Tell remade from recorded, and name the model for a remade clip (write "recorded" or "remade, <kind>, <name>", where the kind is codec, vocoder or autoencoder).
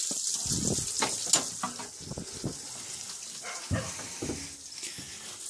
recorded